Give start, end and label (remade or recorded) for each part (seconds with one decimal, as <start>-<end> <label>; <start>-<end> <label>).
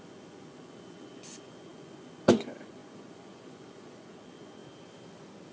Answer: 0.0-4.6 remade; 4.6-5.5 recorded